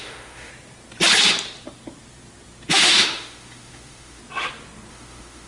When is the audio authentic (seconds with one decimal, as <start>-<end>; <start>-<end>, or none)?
0.5-2.7; 4.2-4.9